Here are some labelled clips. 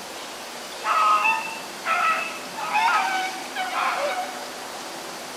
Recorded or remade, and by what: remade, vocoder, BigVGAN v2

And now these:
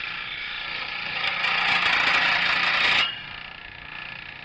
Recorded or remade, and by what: recorded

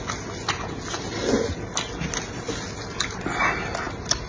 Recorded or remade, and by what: recorded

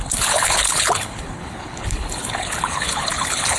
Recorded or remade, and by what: remade, codec, HILCodec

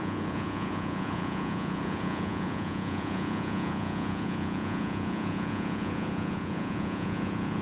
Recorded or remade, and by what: remade, vocoder, Vocos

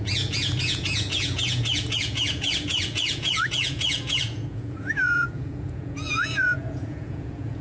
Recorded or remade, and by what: remade, vocoder, Vocos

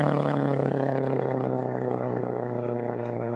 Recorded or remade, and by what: remade, codec, SNAC